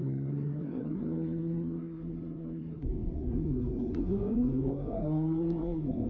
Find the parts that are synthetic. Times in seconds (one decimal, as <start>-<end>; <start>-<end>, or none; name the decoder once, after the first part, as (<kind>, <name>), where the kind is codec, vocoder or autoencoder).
0.0-6.1 (codec, SNAC)